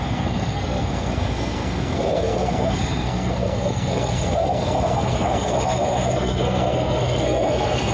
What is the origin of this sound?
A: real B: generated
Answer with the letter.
B